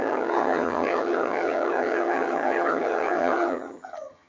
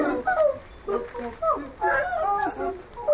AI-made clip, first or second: first